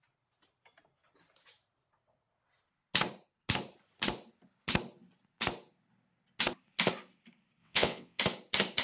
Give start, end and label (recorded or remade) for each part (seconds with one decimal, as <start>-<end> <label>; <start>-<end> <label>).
0.0-7.6 recorded; 7.6-8.2 remade; 8.2-8.8 recorded